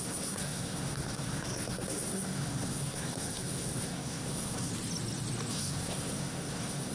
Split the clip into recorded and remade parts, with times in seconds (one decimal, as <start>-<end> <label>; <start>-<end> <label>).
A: 0.0-4.7 remade; 4.7-5.5 recorded; 5.5-6.9 remade